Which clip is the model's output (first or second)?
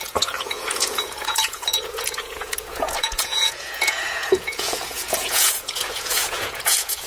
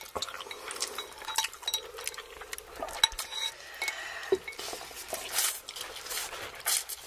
first